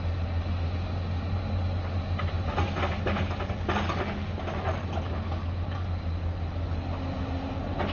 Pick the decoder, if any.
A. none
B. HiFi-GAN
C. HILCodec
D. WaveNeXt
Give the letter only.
A